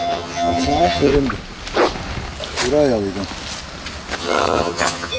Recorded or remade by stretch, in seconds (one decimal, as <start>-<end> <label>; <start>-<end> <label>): 0.0-1.1 remade; 1.1-4.2 recorded; 4.2-5.2 remade